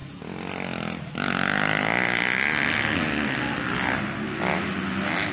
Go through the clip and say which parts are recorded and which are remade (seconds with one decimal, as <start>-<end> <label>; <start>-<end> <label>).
0.0-5.3 recorded